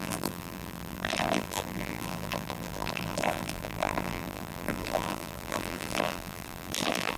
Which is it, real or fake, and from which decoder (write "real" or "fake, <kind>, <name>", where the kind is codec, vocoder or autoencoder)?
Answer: fake, vocoder, BigVGAN v2